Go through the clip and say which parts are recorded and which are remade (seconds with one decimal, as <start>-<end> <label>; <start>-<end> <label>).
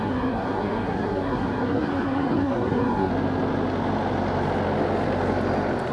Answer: 0.0-3.1 remade; 3.1-5.9 recorded